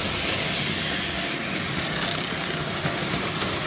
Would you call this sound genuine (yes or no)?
yes